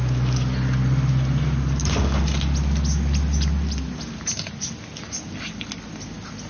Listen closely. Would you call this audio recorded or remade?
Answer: recorded